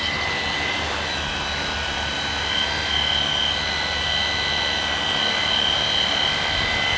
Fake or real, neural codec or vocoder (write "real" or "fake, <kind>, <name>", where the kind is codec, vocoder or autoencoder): real